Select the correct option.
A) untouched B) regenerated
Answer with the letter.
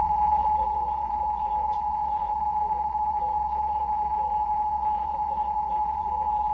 B